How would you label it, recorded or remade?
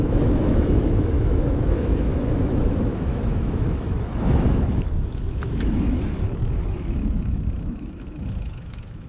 remade